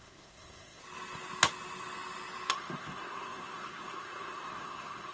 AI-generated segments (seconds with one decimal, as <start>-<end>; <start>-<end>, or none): 0.0-0.8; 2.5-5.1